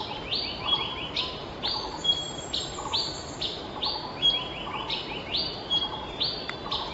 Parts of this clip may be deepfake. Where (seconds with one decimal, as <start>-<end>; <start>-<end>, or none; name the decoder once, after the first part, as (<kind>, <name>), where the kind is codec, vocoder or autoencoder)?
1.4-3.9 (vocoder, BigVGAN v2)